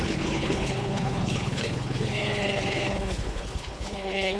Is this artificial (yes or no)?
yes